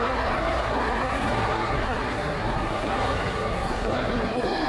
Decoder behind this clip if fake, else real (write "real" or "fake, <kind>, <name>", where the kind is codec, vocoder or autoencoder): fake, codec, SNAC